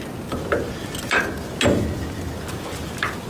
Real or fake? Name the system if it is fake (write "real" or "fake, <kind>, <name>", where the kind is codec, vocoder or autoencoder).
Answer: real